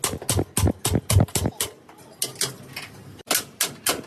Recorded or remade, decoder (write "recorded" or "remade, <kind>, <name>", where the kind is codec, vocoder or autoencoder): recorded